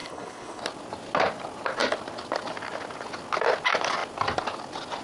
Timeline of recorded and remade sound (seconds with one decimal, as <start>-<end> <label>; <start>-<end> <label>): 0.0-0.6 remade; 0.6-5.0 recorded